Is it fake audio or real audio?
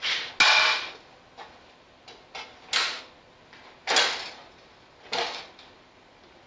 real